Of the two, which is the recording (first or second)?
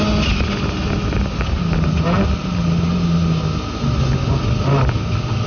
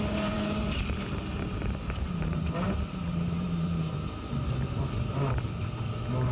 first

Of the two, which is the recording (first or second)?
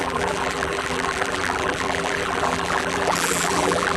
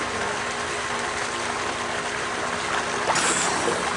second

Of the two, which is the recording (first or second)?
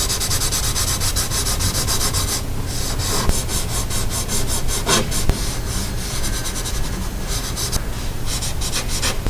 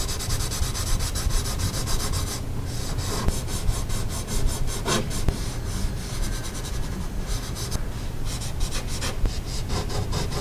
first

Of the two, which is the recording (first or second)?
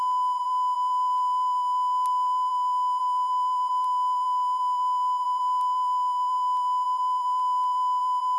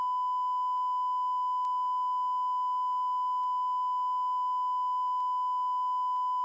second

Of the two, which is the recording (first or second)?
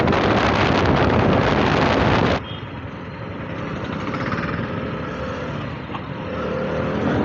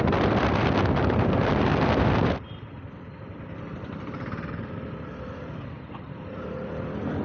first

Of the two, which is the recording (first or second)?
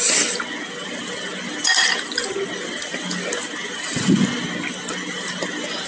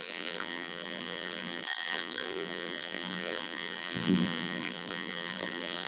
first